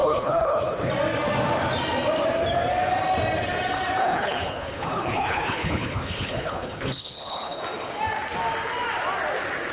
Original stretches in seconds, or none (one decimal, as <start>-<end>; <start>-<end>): 0.9-4.0; 7.6-9.7